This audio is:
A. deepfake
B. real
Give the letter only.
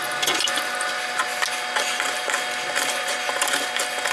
B